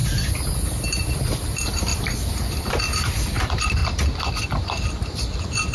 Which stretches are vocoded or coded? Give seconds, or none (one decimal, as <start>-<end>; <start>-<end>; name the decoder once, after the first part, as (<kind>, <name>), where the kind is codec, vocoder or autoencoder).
0.5-3.8 (vocoder, BigVGAN v2); 4.4-5.7